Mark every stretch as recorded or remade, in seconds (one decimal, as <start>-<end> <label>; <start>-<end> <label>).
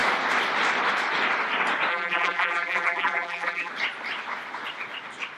0.0-1.9 recorded; 1.9-3.7 remade; 3.7-5.4 recorded